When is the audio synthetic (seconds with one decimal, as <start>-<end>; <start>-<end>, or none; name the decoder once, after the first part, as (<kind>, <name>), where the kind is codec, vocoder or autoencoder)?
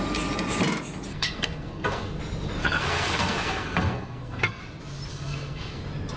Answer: 1.1-2.2 (codec, SNAC); 2.6-4.6; 5.1-5.8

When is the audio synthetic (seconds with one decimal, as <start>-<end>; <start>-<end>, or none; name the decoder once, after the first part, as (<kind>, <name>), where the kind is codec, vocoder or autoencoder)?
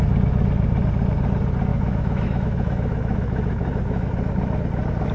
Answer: 1.7-4.1 (autoencoder, DAC-VAE)